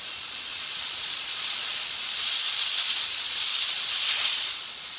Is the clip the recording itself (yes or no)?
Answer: no